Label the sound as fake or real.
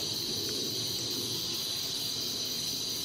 real